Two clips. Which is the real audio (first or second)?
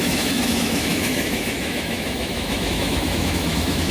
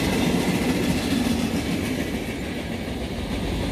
second